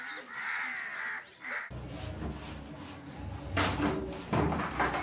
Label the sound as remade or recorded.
recorded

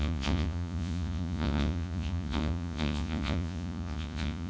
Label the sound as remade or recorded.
remade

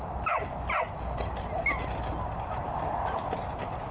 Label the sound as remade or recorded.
recorded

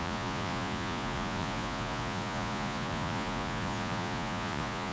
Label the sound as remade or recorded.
remade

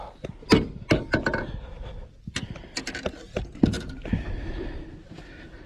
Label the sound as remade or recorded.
recorded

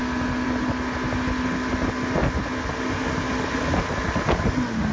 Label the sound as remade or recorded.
recorded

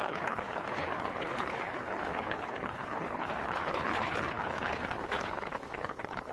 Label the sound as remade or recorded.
remade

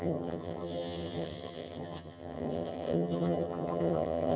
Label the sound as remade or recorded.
remade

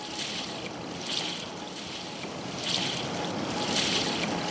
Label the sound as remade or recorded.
recorded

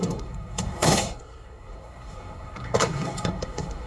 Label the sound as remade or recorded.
remade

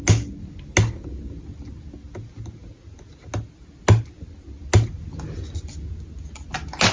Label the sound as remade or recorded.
recorded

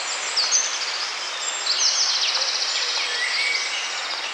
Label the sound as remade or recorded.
recorded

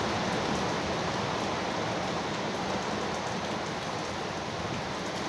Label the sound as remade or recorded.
recorded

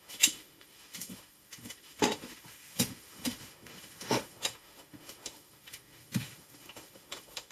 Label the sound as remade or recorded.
remade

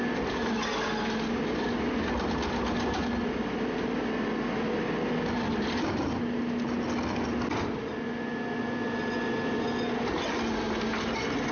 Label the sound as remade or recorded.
recorded